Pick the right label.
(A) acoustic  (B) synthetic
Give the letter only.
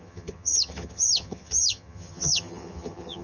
B